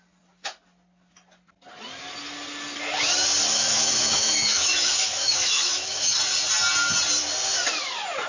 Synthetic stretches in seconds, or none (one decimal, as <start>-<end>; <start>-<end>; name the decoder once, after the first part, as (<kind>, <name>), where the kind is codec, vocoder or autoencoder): 3.5-6.2 (autoencoder, DAC-VAE)